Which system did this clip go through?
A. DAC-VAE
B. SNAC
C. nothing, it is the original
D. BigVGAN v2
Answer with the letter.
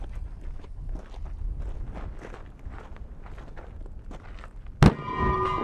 C